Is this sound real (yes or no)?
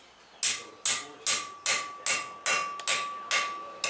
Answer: yes